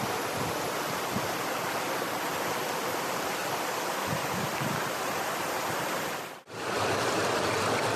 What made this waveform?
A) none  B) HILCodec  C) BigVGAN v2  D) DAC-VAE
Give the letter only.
A